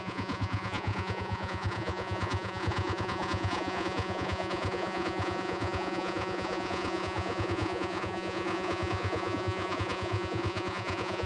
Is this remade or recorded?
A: remade